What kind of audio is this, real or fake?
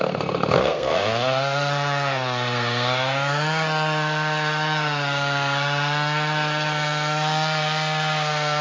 fake